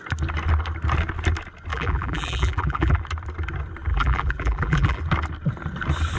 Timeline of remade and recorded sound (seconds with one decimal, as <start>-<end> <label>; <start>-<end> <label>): 0.0-1.7 recorded; 1.7-3.0 remade; 3.0-3.9 recorded; 3.9-5.0 remade; 5.0-6.2 recorded

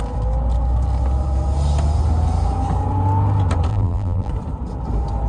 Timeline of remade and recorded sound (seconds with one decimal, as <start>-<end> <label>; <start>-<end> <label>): 0.0-3.7 recorded; 3.7-4.3 remade; 4.3-5.3 recorded

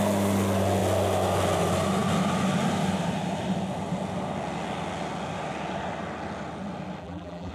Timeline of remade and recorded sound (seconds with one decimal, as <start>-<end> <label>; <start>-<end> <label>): 0.0-7.0 recorded; 7.0-7.5 remade